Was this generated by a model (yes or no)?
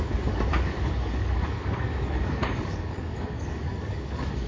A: yes